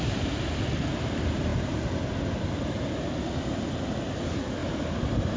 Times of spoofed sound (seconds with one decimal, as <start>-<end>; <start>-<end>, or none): 4.6-5.4